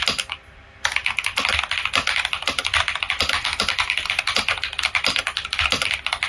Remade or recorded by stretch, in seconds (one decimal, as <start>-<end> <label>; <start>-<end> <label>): 0.0-6.3 recorded